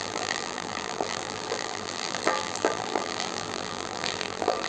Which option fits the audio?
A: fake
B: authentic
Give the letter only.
A